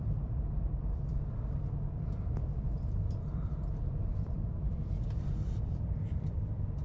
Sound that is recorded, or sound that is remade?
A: remade